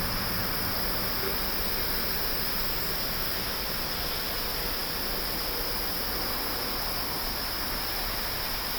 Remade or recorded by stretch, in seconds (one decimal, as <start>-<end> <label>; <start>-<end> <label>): 0.0-8.8 recorded